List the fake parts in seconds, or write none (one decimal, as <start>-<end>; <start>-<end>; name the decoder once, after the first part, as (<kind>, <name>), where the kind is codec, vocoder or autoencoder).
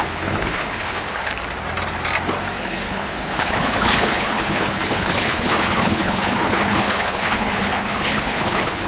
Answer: 0.0-1.3 (codec, HILCodec); 2.6-8.9